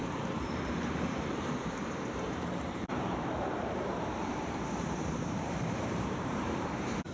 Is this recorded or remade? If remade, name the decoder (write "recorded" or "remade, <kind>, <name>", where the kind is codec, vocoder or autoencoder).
remade, vocoder, BigVGAN v2